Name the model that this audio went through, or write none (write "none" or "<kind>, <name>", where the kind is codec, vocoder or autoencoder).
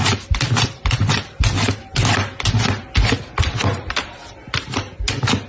none